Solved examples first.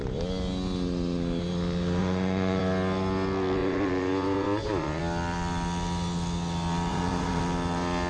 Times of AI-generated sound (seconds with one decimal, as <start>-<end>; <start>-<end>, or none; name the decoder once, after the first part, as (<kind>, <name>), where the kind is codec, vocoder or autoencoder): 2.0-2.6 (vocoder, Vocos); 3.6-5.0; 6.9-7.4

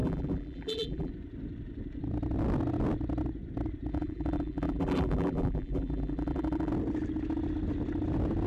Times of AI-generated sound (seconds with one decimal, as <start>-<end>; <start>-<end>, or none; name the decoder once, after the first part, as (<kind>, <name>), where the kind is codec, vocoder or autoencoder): 0.0-1.1 (vocoder, BigVGAN v2); 3.9-6.7

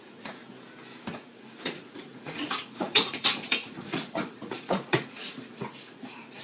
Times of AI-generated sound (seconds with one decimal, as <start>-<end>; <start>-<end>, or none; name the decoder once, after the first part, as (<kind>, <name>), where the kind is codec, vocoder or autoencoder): 0.0-0.4 (vocoder, Vocos); 1.1-6.4